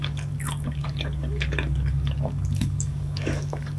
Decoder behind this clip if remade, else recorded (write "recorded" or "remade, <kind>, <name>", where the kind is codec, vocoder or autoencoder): remade, codec, DAC